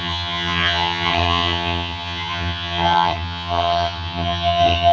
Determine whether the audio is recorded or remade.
remade